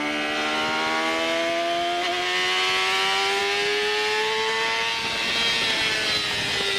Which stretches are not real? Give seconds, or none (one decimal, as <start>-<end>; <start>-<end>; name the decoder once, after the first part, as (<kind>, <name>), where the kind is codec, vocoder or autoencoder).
none